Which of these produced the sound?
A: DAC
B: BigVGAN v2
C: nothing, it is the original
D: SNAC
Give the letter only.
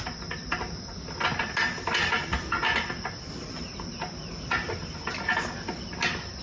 C